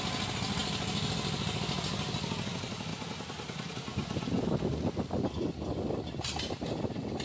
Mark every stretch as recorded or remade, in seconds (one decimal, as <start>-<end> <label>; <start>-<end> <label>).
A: 0.0-7.2 recorded